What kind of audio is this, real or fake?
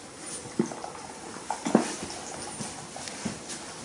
real